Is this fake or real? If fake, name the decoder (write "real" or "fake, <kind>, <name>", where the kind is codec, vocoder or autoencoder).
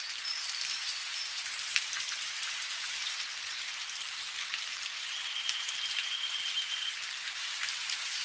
fake, vocoder, BigVGAN v2